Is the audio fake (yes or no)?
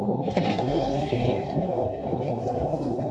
yes